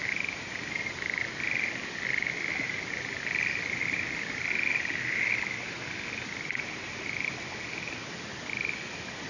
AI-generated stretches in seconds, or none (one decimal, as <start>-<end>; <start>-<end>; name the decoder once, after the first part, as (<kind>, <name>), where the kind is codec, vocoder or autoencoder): none